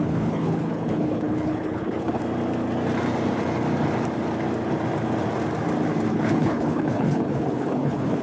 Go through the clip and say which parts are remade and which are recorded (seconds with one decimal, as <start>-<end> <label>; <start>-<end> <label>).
0.0-2.2 remade; 2.2-6.1 recorded; 6.1-8.2 remade